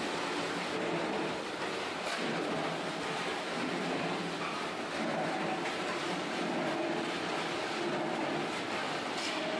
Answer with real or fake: fake